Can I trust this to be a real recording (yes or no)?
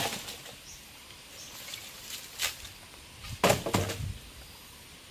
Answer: yes